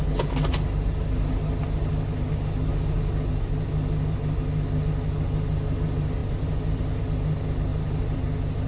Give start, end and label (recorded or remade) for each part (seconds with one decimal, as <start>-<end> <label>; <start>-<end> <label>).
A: 0.0-6.2 recorded; 6.2-7.0 remade; 7.0-7.7 recorded; 7.7-8.7 remade

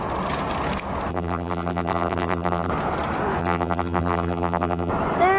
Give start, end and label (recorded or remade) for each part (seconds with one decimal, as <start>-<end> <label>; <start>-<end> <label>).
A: 0.0-1.1 recorded; 1.1-2.7 remade; 2.7-3.4 recorded; 3.4-4.9 remade; 4.9-5.4 recorded

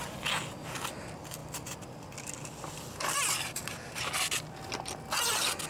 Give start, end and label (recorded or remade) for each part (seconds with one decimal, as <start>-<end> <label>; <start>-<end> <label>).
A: 0.0-5.7 recorded